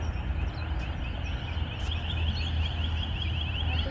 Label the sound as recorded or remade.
recorded